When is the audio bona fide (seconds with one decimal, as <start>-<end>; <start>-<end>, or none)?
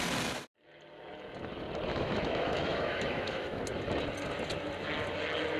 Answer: 0.0-1.9; 3.6-5.6